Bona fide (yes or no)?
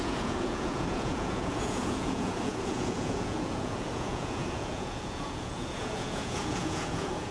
no